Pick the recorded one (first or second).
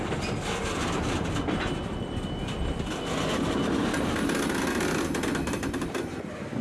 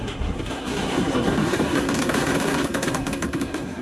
first